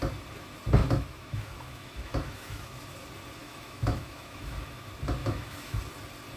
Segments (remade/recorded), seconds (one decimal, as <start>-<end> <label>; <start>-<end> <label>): 0.0-0.8 recorded; 0.8-2.8 remade; 2.8-3.4 recorded; 3.4-4.5 remade; 4.5-5.2 recorded; 5.2-5.8 remade; 5.8-6.4 recorded